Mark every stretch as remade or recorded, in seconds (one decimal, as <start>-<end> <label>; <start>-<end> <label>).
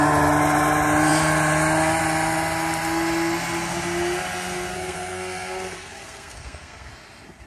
0.0-4.7 recorded; 4.7-6.9 remade; 6.9-7.5 recorded